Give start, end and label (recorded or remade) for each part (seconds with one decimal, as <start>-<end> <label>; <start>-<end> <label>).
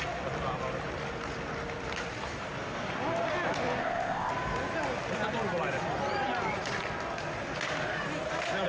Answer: 0.0-3.8 recorded; 3.8-4.3 remade; 4.3-8.7 recorded